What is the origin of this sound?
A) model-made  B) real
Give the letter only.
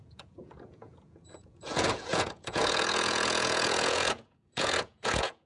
A